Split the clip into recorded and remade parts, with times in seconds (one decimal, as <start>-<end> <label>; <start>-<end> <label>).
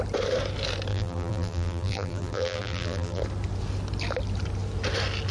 0.0-0.9 recorded; 0.9-3.2 remade; 3.2-5.3 recorded